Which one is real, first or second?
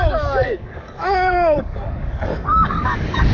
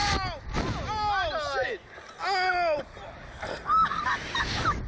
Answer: second